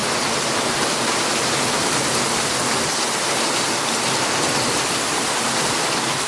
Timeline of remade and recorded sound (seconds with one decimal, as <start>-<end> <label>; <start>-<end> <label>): 0.0-6.3 recorded